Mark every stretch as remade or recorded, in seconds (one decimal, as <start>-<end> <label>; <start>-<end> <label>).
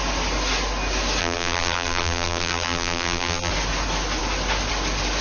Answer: 0.0-1.2 recorded; 1.2-3.5 remade; 3.5-5.2 recorded